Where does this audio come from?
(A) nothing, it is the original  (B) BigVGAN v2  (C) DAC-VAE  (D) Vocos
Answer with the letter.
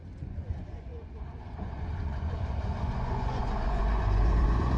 D